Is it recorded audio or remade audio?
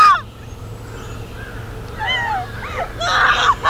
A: recorded